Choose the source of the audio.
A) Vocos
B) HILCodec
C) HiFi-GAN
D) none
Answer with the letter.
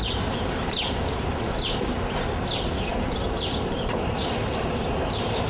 D